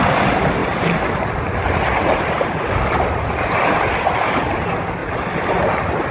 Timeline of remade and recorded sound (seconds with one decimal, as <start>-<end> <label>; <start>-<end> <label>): 0.0-6.1 recorded